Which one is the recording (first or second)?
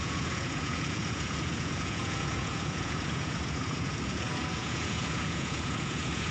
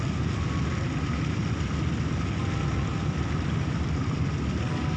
second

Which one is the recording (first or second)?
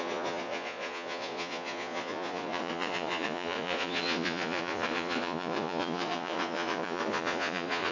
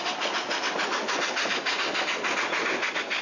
second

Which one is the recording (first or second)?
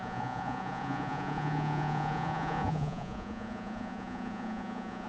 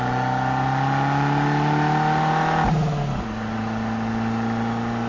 second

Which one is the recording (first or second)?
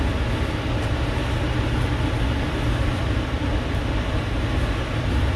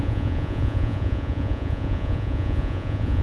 first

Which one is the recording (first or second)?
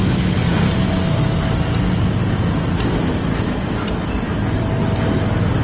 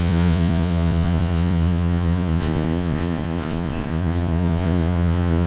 first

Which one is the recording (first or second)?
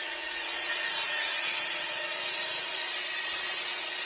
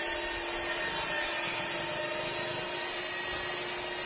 second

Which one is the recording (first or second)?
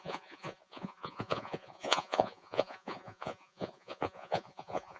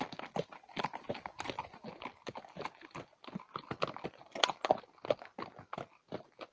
second